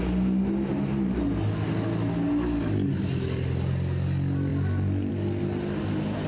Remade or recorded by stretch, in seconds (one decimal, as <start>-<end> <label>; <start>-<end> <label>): 0.0-6.3 recorded